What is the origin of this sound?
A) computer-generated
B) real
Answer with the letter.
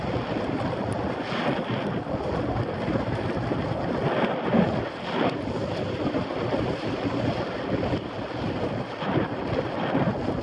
B